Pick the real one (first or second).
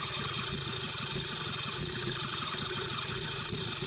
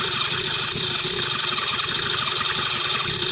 second